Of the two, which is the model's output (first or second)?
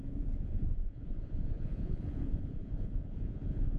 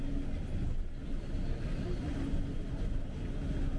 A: first